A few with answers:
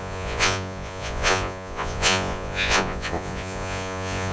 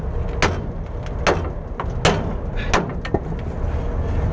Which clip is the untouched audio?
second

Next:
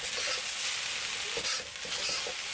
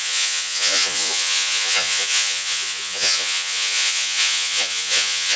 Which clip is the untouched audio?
first